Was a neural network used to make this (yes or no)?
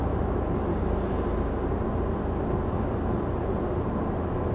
no